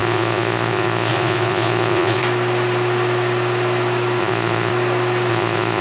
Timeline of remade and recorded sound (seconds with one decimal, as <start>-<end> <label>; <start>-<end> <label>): 0.0-2.2 remade; 2.2-4.2 recorded; 4.2-4.7 remade; 4.7-5.3 recorded; 5.3-5.8 remade